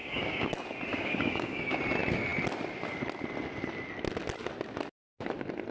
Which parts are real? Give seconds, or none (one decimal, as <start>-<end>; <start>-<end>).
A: 0.5-0.9; 1.8-5.7